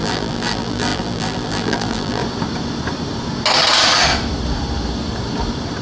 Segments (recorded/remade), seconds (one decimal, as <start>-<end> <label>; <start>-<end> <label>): 0.0-2.2 remade; 2.2-5.8 recorded